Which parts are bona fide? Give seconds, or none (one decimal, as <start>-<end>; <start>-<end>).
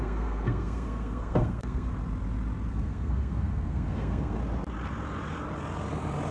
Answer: 1.9-2.7; 4.4-6.3